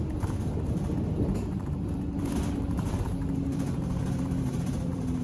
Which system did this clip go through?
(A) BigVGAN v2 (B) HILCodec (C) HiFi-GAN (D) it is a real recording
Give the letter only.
A